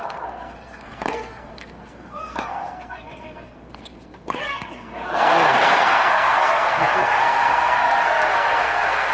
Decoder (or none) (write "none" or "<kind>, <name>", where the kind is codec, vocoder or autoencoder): codec, SNAC